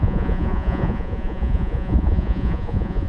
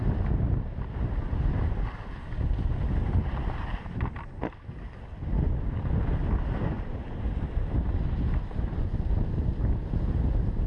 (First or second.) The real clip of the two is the second